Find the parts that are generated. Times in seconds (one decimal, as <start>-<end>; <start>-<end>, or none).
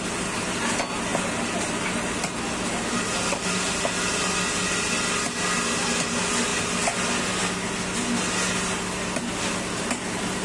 none